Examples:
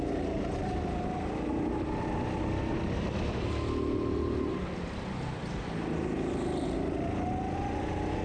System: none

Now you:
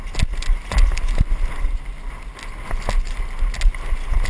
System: none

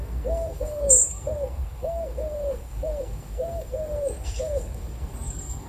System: codec, SNAC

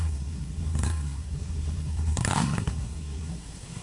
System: codec, SNAC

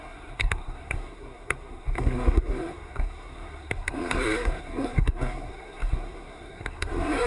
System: codec, SNAC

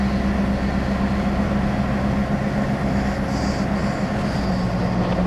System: none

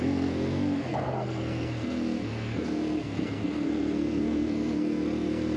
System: codec, SNAC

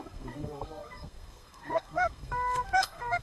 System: codec, SNAC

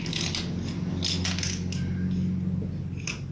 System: none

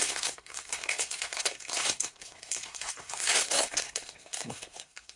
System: codec, SNAC